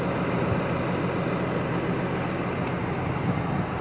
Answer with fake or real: real